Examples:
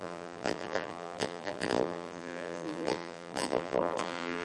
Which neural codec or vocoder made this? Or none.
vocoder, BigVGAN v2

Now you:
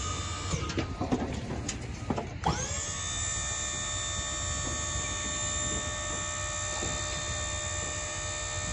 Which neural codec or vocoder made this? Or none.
none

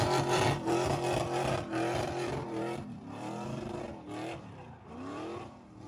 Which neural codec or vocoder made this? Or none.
vocoder, BigVGAN v2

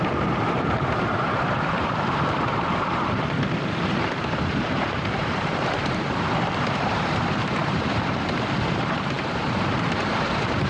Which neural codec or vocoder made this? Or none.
vocoder, BigVGAN v2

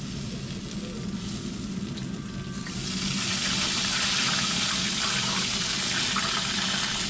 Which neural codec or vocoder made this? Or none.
none